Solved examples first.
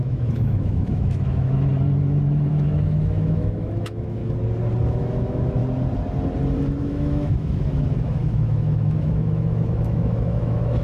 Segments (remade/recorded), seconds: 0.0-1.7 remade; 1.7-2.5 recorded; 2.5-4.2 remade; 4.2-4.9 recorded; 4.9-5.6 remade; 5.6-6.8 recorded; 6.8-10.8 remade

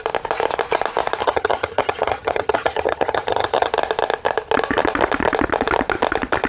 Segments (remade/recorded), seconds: 0.0-1.2 recorded; 1.2-3.7 remade; 3.7-6.5 recorded

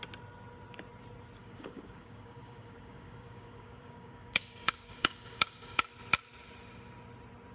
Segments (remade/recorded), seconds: 0.0-1.4 recorded; 1.4-5.9 remade; 5.9-7.5 recorded

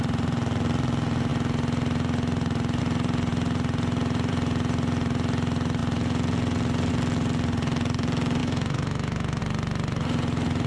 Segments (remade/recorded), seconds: 0.0-8.4 recorded; 8.4-9.4 remade; 9.4-10.7 recorded

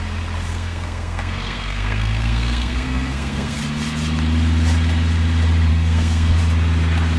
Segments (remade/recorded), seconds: 0.0-0.5 recorded; 0.5-3.6 remade; 3.6-5.7 recorded; 5.7-6.4 remade; 6.4-7.2 recorded